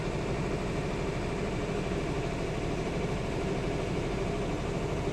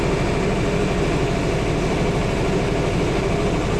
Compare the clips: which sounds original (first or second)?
second